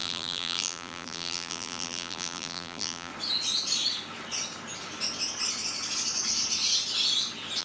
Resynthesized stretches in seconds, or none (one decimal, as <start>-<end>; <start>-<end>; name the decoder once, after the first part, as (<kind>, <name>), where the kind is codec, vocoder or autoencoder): 0.0-3.1 (vocoder, BigVGAN v2)